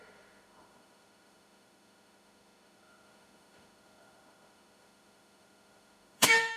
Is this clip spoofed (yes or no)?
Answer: yes